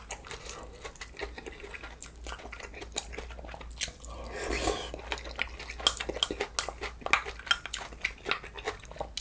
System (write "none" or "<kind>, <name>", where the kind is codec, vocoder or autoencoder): none